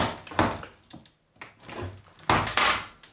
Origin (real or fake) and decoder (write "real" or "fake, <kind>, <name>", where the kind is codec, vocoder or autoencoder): real